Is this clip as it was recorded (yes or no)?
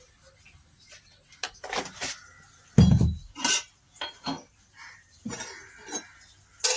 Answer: yes